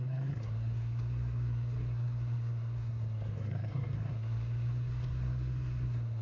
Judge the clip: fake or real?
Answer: fake